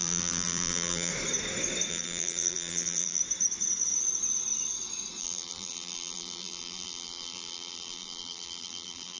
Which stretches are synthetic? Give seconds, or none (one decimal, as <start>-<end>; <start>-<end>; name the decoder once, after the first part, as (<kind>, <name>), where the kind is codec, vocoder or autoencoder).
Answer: 0.0-1.1 (vocoder, BigVGAN v2); 1.9-3.2; 5.2-9.2